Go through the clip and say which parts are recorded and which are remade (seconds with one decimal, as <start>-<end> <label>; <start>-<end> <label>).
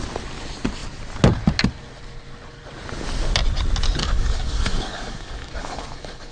0.0-4.0 recorded; 4.0-6.3 remade